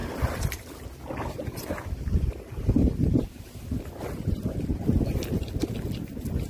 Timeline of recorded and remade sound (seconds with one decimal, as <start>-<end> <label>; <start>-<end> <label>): 0.0-6.5 recorded